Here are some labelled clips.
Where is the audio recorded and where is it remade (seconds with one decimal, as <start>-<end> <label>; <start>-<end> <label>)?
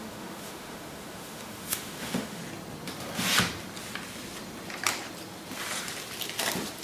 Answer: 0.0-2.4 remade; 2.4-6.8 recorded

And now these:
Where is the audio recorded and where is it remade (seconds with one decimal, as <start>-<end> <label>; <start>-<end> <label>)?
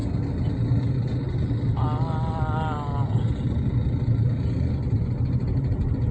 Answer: 0.0-6.1 recorded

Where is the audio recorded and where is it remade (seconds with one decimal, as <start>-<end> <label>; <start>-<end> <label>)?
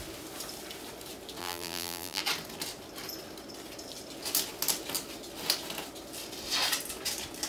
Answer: 0.0-1.4 recorded; 1.4-2.2 remade; 2.2-7.5 recorded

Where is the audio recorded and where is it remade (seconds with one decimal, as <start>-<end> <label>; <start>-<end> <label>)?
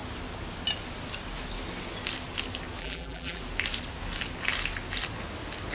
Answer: 0.0-2.8 recorded; 2.8-3.4 remade; 3.4-5.7 recorded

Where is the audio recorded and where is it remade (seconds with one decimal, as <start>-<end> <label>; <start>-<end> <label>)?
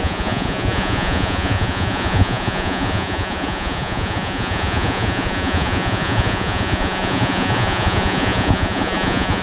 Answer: 0.0-9.4 remade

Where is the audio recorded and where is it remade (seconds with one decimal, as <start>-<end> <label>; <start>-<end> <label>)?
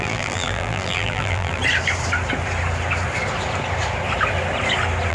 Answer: 0.0-1.6 remade; 1.6-5.1 recorded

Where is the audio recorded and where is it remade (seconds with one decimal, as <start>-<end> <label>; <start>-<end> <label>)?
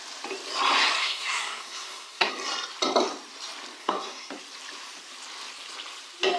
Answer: 0.0-1.0 recorded; 1.0-2.3 remade; 2.3-3.8 recorded; 3.8-4.3 remade; 4.3-6.4 recorded